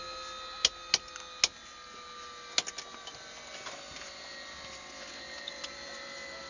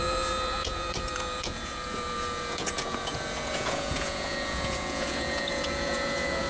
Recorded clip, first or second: first